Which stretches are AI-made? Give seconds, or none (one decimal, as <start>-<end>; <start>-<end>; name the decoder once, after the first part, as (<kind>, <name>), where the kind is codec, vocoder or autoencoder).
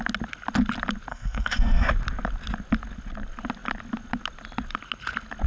1.1-1.9 (codec, SNAC)